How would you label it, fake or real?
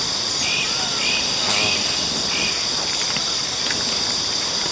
real